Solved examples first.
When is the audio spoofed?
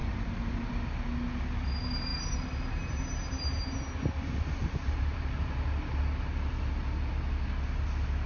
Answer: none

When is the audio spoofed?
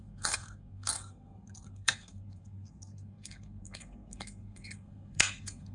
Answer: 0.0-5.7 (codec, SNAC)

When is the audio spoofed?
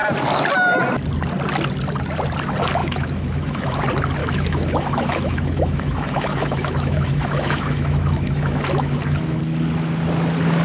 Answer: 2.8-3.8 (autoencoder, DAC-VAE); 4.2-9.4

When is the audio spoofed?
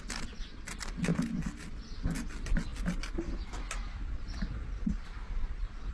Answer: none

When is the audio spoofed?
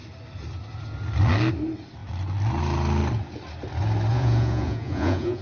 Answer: 4.1-5.4 (vocoder, Vocos)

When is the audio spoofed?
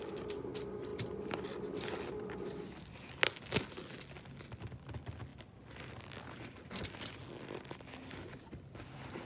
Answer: none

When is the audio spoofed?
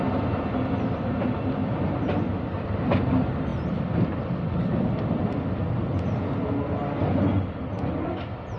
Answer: 1.6-2.2 (vocoder, BigVGAN v2); 3.5-4.2